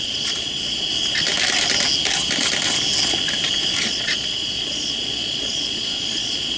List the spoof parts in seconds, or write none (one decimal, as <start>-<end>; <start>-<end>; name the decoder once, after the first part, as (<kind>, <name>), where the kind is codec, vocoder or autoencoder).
0.0-0.9 (vocoder, Vocos); 3.8-6.6